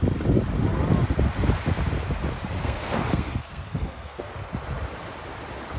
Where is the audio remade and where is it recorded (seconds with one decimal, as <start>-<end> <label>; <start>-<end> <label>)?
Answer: 0.0-2.6 recorded; 2.6-4.3 remade; 4.3-5.8 recorded